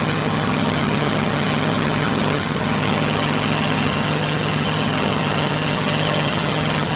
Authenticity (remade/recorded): remade